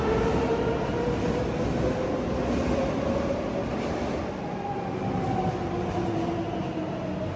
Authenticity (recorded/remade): recorded